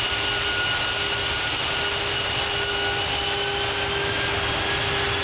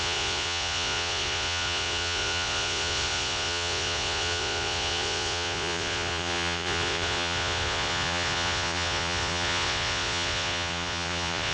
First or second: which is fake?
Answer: second